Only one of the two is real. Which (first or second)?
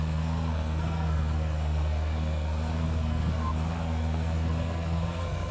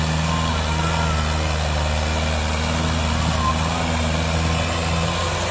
second